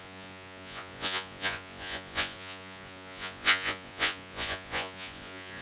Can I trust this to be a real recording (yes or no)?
no